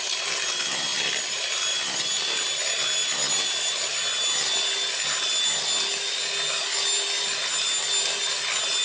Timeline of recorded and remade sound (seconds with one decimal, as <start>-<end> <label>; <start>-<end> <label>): 0.0-8.8 recorded